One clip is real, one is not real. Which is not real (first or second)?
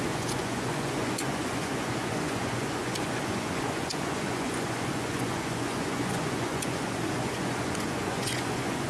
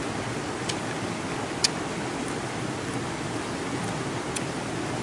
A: first